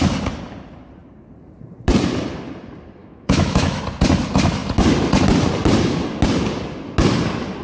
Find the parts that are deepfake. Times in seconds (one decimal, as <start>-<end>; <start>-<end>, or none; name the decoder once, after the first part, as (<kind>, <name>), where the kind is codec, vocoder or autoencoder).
3.0-3.8 (autoencoder, DAC-VAE)